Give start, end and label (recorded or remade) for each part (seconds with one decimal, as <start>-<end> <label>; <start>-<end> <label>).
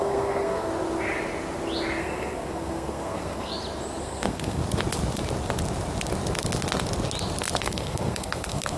0.0-0.7 remade; 0.7-2.0 recorded; 2.0-3.5 remade; 3.5-4.0 recorded; 4.0-4.6 remade; 4.6-7.6 recorded; 7.6-8.8 remade